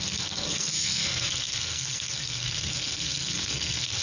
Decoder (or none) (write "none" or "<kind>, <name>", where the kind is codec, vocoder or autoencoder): codec, SNAC